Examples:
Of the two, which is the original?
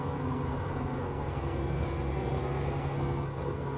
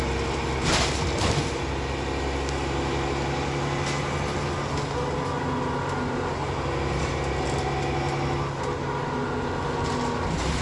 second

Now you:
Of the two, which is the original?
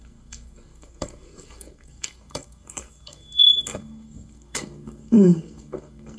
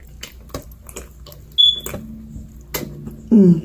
second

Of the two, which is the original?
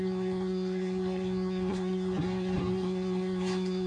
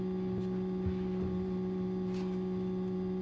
second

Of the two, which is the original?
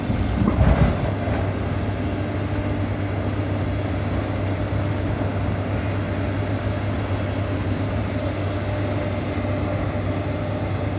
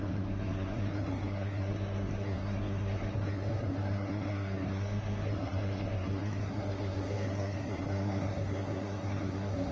first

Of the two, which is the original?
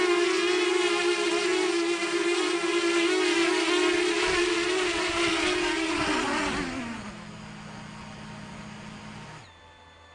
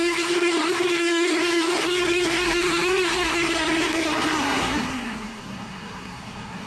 first